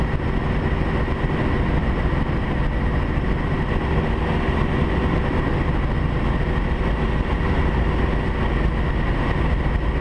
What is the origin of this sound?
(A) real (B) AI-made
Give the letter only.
A